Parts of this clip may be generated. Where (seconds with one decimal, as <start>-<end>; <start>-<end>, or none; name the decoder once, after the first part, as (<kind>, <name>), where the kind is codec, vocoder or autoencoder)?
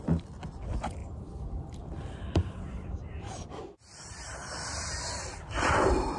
1.0-3.6 (vocoder, BigVGAN v2); 4.7-5.5